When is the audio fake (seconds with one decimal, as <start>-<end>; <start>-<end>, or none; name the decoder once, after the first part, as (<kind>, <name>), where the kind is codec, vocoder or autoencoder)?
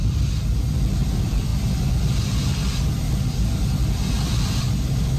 none